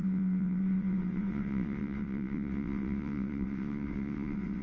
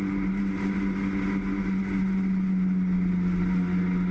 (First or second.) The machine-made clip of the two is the first